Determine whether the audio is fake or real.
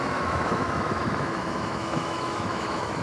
fake